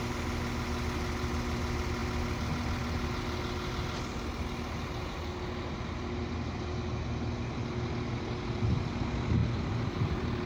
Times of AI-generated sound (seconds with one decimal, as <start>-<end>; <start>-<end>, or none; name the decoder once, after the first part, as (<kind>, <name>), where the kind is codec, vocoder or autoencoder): 9.4-10.5 (vocoder, BigVGAN v2)